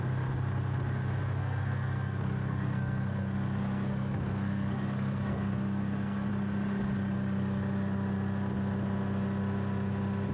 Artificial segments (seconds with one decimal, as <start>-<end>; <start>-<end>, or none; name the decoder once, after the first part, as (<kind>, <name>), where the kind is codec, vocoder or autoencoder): 1.4-6.3 (codec, SNAC)